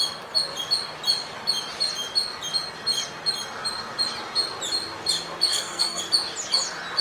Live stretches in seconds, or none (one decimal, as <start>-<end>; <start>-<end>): 0.0-5.5; 6.0-7.0